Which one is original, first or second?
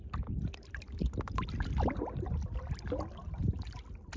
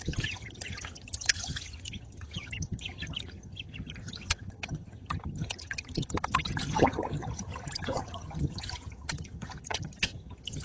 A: first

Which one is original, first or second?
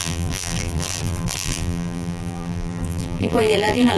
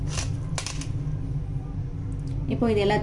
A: second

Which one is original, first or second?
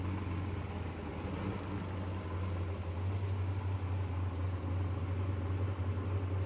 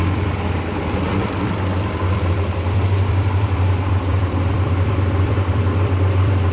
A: first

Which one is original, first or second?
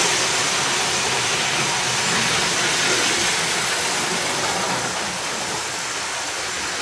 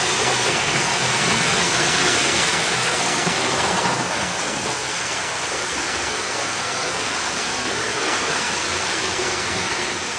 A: first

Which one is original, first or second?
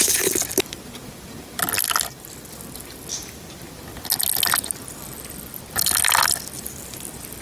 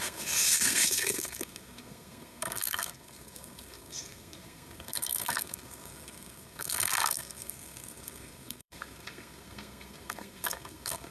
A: first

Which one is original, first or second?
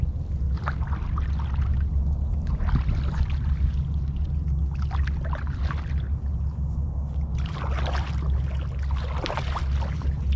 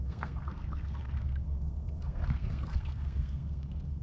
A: first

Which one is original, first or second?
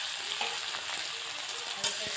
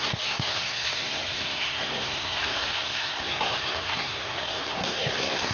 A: first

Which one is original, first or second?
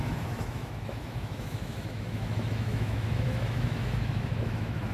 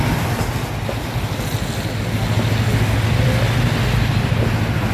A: second